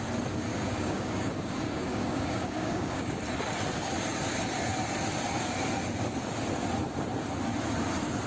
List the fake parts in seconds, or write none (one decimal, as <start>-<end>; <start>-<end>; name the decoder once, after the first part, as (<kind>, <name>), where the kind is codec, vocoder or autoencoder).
0.5-3.1 (codec, DAC)

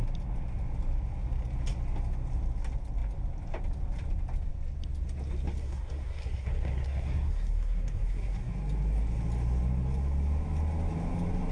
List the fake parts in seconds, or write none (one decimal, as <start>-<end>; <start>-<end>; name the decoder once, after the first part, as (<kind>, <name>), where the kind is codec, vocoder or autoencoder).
5.6-8.5 (codec, SNAC)

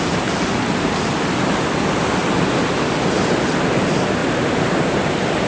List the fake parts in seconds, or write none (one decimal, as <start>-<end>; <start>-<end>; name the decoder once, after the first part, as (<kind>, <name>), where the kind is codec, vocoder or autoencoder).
4.2-5.5 (vocoder, BigVGAN v2)

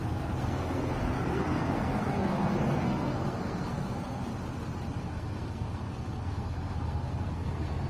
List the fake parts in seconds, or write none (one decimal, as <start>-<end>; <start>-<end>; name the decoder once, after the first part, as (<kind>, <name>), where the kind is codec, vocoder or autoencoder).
0.0-4.3 (codec, SNAC); 5.0-7.9

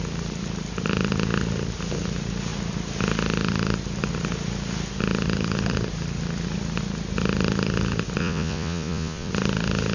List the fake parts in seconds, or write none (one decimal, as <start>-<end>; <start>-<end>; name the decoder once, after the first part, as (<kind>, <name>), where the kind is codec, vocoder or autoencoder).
8.2-9.3 (vocoder, Vocos)

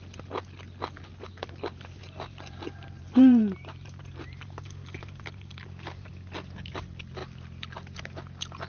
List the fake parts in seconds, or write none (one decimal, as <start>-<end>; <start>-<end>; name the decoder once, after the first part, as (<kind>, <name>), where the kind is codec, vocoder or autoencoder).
2.0-6.1 (vocoder, BigVGAN v2)